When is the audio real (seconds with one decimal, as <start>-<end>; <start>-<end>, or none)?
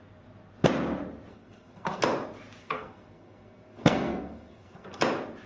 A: 0.0-1.3; 2.0-2.6; 5.0-5.5